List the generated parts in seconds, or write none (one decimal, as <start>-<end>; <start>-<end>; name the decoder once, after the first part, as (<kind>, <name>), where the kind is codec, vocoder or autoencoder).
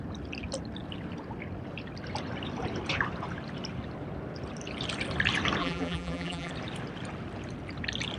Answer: 5.6-6.5 (vocoder, BigVGAN v2)